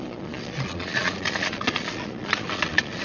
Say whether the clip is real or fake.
fake